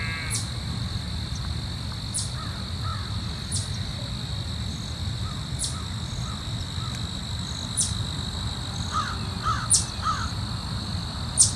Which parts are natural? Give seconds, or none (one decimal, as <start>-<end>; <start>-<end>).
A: 0.0-11.6